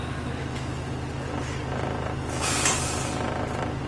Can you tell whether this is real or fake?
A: real